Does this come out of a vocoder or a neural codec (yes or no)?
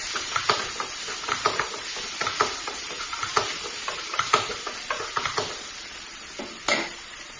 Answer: no